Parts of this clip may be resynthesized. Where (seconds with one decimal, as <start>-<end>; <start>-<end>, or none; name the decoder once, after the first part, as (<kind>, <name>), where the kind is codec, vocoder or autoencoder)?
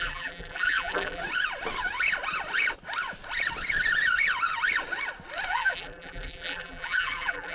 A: 0.0-1.2 (vocoder, BigVGAN v2); 5.5-7.5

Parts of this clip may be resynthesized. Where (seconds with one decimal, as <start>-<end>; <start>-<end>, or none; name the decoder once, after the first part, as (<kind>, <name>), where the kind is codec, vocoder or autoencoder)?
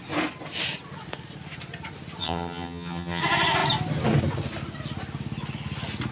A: 2.2-3.2 (vocoder, HiFi-GAN)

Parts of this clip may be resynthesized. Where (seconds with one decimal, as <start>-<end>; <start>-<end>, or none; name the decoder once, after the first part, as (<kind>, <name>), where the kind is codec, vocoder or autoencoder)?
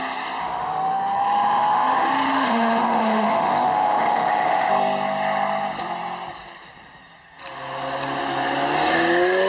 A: 0.4-4.7 (autoencoder, DAC-VAE)